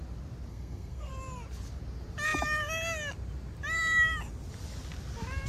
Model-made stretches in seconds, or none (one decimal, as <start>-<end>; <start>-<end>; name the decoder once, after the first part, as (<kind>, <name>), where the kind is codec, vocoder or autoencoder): 0.5-1.1 (codec, SNAC)